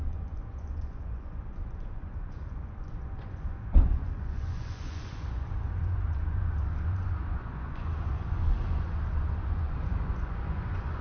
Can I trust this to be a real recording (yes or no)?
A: no